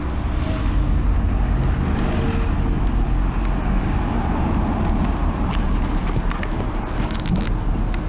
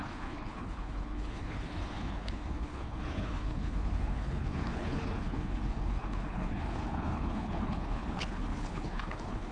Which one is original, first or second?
first